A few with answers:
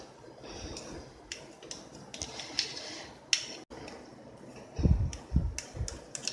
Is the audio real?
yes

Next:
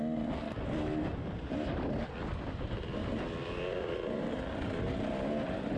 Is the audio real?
yes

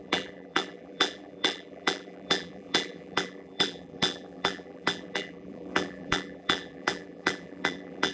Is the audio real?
no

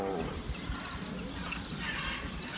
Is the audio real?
yes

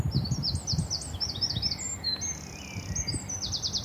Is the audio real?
yes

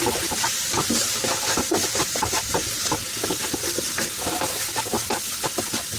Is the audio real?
yes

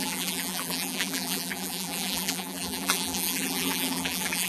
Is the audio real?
no